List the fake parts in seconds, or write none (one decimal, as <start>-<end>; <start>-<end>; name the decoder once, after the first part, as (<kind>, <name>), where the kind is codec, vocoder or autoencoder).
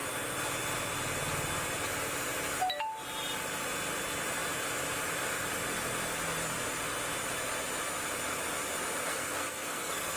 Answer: 9.1-10.2 (codec, SNAC)